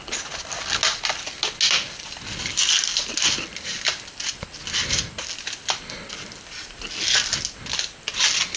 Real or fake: real